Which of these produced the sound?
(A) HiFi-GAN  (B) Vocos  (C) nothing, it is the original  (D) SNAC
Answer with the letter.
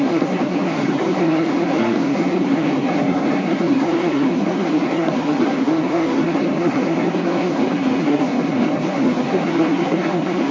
D